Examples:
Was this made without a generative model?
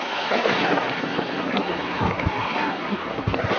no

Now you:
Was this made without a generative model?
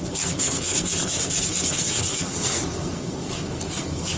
no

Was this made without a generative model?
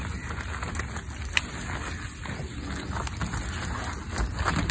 yes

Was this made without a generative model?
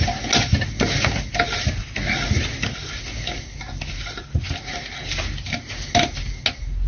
yes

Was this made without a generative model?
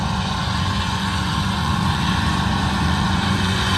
no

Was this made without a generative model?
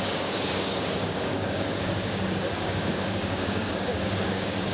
no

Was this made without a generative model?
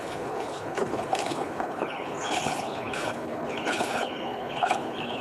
no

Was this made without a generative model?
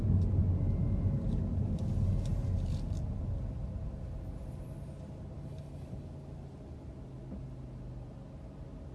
yes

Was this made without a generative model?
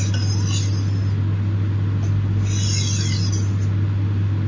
yes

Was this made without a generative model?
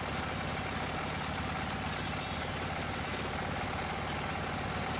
yes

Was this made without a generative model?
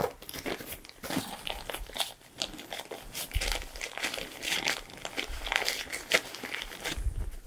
yes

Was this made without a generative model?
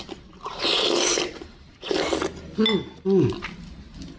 yes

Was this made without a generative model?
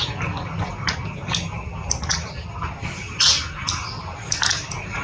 yes